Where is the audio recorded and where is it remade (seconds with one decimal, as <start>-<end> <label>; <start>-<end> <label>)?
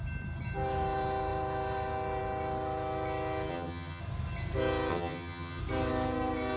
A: 0.0-3.5 recorded; 3.5-4.0 remade; 4.0-4.9 recorded; 4.9-5.6 remade; 5.6-6.6 recorded